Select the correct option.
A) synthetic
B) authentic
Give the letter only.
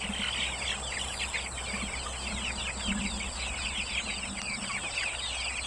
B